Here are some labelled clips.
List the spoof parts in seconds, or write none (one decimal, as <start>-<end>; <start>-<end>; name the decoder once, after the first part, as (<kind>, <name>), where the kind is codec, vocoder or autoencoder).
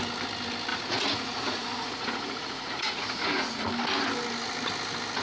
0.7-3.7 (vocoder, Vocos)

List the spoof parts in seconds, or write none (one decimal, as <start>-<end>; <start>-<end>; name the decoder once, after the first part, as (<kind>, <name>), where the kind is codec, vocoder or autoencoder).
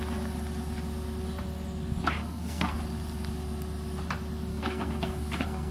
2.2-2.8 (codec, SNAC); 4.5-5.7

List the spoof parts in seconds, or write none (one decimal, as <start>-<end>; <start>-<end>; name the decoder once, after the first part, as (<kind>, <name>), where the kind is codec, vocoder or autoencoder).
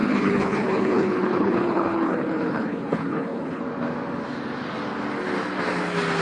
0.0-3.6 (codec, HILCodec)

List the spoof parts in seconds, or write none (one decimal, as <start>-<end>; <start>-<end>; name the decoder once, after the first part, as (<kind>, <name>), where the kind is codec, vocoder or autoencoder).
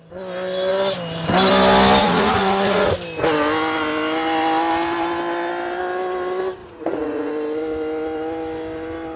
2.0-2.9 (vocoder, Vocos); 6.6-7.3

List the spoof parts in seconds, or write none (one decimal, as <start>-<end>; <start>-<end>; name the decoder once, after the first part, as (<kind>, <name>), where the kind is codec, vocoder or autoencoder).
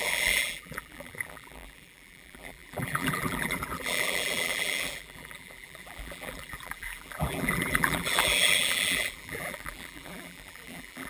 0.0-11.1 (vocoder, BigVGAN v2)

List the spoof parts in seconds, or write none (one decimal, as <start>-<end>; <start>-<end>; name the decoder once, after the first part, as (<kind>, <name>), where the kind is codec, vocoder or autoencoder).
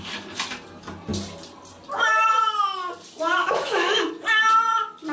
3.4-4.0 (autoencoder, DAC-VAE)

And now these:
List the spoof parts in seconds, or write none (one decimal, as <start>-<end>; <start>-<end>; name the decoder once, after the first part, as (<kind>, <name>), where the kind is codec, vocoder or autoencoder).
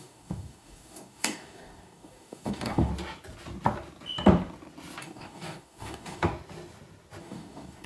0.0-2.9 (codec, DAC); 5.0-6.3; 7.2-7.9